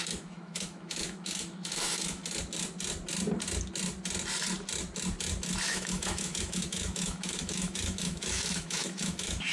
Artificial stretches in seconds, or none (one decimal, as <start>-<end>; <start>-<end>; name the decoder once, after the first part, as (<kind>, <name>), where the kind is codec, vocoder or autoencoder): 0.0-2.2 (autoencoder, DAC-VAE); 5.7-9.5